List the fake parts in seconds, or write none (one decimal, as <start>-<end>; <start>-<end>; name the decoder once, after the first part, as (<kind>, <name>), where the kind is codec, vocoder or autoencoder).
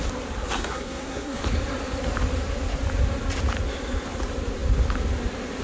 0.4-1.4 (codec, SNAC)